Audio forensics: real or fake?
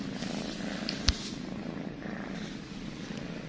real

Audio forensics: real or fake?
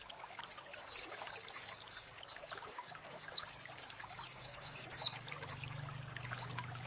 fake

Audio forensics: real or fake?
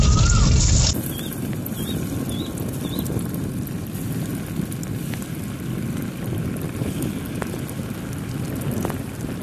real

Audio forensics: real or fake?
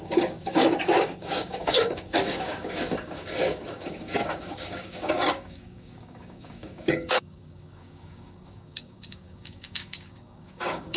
fake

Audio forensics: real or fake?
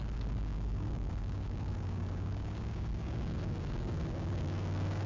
fake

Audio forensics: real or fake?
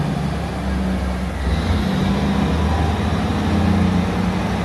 real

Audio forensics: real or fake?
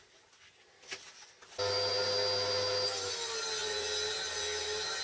real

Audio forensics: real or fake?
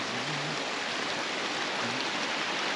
real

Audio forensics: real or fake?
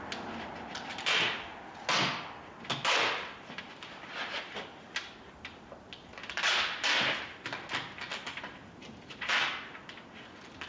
real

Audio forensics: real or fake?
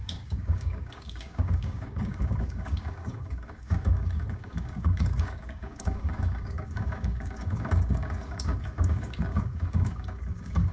fake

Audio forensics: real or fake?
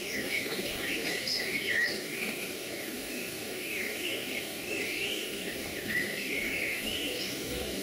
fake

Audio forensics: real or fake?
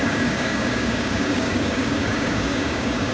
fake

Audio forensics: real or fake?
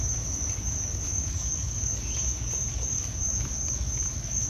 fake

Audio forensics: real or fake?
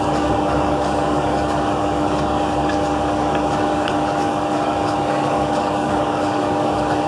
fake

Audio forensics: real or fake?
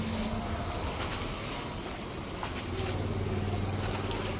real